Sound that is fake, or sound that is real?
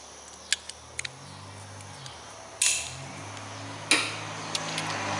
real